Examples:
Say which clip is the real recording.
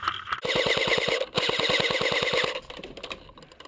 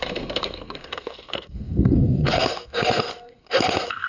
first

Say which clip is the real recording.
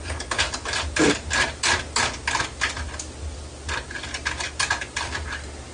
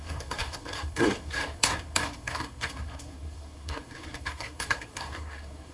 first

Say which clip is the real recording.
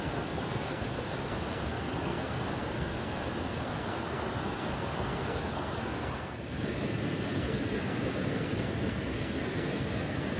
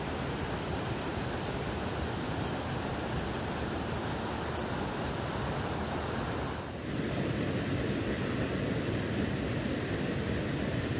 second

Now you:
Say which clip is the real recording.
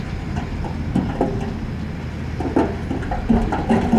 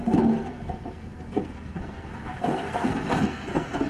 first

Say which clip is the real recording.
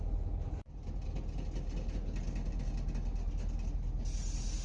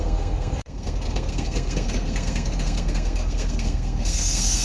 first